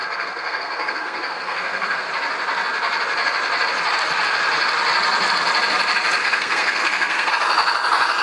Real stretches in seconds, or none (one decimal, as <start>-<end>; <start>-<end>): 2.1-6.2; 7.3-8.2